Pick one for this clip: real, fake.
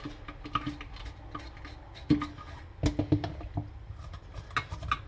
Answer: real